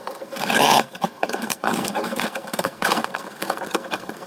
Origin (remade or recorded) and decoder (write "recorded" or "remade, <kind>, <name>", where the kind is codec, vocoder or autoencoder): remade, codec, SNAC